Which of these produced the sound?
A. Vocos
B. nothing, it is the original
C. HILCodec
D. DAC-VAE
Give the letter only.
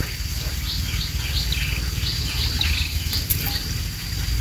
B